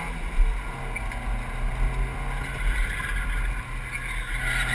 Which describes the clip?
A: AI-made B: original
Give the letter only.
B